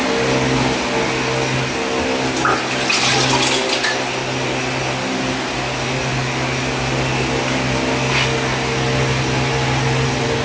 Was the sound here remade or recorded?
recorded